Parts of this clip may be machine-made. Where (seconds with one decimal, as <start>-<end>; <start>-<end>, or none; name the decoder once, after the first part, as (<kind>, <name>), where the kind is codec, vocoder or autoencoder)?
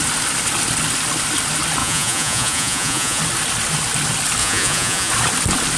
1.8-3.2 (vocoder, Vocos); 4.4-5.1